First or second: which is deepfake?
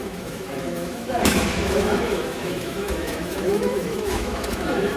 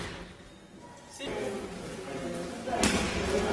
first